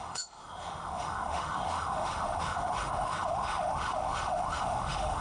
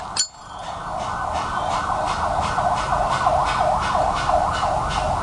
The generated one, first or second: first